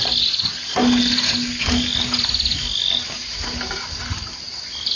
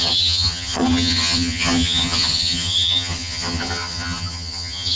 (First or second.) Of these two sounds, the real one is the first